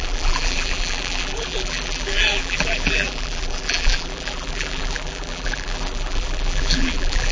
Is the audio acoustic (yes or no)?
no